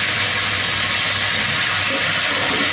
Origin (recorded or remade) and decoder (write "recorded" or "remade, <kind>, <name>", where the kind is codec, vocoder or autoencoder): recorded